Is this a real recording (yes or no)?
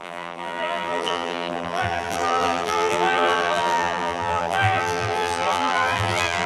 no